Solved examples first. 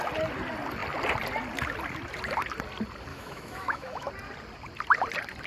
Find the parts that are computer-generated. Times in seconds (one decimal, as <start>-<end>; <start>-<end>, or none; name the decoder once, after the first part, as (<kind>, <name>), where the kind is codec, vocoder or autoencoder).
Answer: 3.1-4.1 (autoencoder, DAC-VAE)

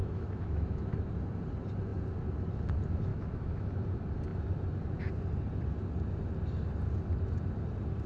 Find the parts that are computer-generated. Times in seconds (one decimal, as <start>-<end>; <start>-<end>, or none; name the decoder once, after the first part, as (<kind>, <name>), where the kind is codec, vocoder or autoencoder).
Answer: 0.0-1.1 (autoencoder, DAC-VAE); 3.1-3.7

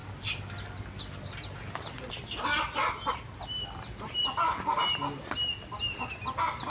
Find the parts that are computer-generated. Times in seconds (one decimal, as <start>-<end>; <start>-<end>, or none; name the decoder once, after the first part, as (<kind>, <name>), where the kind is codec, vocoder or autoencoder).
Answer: none

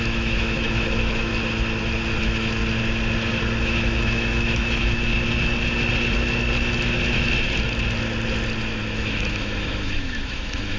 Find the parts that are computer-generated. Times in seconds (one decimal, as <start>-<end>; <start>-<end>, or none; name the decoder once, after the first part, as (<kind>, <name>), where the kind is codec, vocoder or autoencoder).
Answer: 0.0-1.3 (autoencoder, DAC-VAE); 2.2-2.6; 3.6-5.1; 8.8-10.8

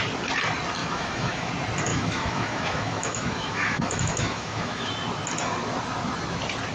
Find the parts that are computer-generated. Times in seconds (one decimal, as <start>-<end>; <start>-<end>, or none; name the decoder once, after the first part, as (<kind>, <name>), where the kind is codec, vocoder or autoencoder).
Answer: 0.8-1.5 (autoencoder, DAC-VAE); 1.9-4.9